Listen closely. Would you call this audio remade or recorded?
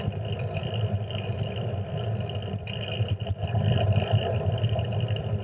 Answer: recorded